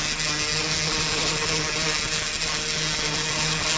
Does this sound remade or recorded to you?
recorded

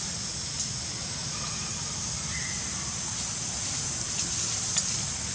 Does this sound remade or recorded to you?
recorded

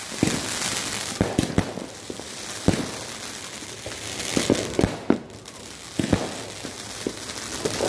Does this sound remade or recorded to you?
recorded